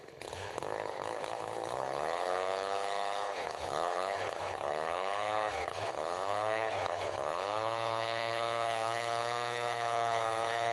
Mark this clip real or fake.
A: fake